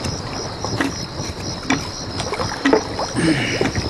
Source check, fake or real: real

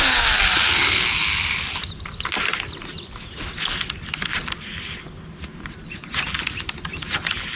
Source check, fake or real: real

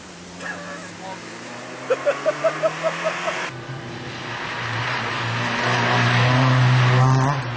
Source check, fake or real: real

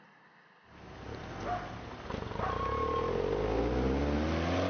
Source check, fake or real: real